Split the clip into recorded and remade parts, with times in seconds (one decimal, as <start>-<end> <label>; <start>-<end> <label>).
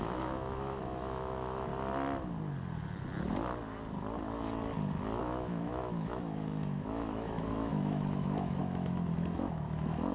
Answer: 0.0-1.7 remade; 1.7-5.2 recorded; 5.2-10.1 remade